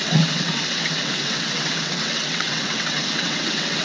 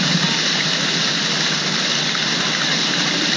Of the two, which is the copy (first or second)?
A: first